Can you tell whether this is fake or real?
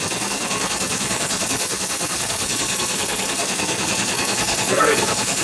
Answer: fake